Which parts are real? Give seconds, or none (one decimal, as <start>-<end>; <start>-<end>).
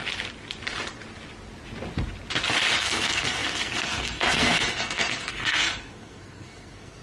0.0-2.8